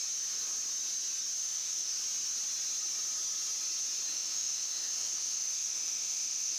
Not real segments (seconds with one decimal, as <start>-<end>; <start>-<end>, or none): 1.4-1.9; 4.1-6.6

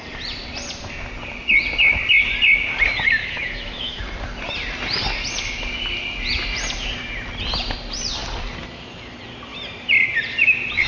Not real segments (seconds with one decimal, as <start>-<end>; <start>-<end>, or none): 3.2-4.0